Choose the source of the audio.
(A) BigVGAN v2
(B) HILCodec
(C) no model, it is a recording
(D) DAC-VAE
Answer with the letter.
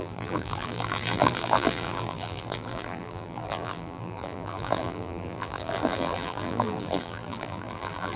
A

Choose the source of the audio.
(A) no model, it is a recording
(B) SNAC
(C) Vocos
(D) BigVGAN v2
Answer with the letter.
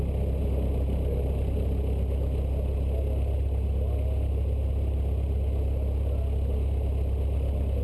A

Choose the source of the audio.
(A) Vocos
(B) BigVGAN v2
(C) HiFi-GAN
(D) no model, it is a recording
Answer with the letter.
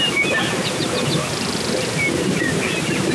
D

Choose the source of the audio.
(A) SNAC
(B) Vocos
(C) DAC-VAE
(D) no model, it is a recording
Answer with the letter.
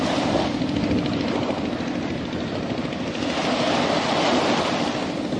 D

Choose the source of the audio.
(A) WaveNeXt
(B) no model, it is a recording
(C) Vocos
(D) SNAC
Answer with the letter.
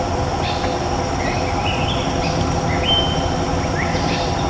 B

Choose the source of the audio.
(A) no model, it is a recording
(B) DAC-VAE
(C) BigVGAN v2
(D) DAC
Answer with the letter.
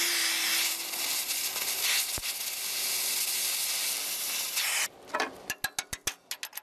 A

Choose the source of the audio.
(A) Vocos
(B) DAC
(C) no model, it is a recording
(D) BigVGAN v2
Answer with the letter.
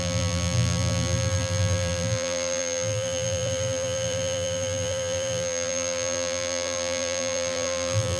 D